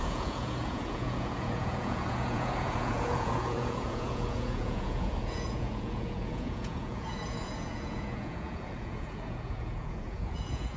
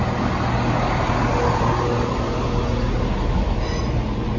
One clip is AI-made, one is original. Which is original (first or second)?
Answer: second